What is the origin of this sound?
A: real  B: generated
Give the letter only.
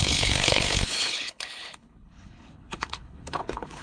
B